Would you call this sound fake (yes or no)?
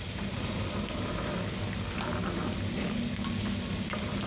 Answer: no